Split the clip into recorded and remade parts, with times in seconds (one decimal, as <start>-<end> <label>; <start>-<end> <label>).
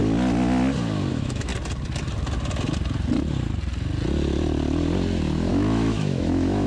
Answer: 0.0-1.1 recorded; 1.1-1.5 remade; 1.5-5.5 recorded; 5.5-6.7 remade